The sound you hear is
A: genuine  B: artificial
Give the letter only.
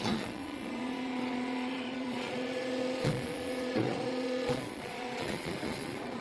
B